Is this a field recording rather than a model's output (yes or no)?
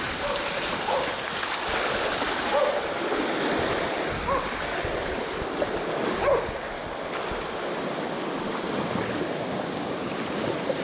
yes